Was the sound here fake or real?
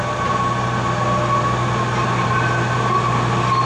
real